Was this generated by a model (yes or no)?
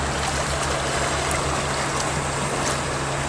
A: no